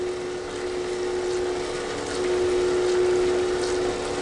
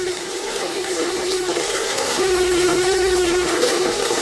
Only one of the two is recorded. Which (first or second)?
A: first